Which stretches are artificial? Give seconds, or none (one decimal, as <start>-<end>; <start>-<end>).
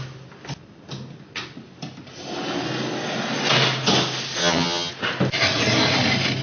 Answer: 4.4-4.9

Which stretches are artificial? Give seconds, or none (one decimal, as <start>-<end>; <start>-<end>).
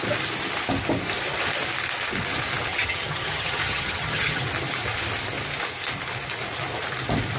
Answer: 2.7-4.4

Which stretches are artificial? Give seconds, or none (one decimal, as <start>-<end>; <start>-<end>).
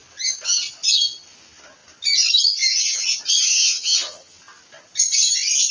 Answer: 3.4-4.4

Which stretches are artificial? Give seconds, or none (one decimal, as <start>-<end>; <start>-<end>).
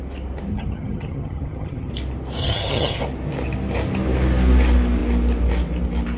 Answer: 0.5-1.9; 2.4-3.0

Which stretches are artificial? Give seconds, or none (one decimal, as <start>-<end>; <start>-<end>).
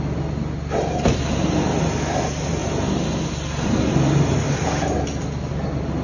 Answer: none